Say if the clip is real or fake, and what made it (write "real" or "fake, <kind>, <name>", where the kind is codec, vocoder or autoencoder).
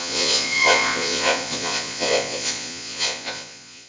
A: fake, vocoder, Vocos